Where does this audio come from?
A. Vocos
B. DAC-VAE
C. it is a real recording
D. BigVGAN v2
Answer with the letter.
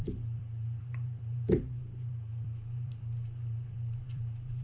D